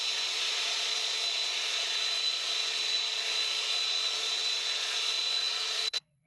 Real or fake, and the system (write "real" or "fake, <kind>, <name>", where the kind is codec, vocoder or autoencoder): fake, vocoder, Vocos